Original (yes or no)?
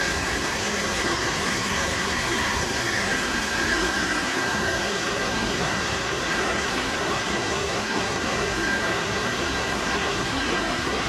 no